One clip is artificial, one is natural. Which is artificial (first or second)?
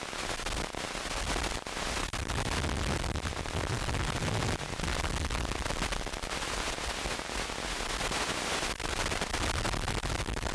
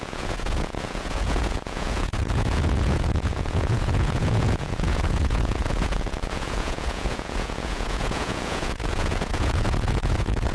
second